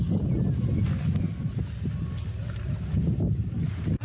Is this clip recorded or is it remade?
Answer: recorded